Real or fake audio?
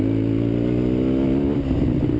real